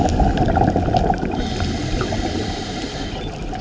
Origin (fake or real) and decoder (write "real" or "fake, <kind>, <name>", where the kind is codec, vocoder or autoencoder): real